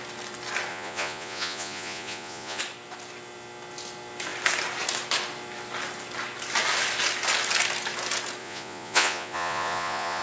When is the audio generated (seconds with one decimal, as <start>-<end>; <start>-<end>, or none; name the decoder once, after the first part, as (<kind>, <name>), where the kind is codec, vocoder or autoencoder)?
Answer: 0.7-2.6 (vocoder, Vocos); 8.4-10.2